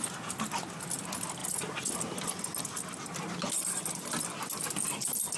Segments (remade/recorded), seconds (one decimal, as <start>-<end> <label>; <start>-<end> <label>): 0.0-5.4 recorded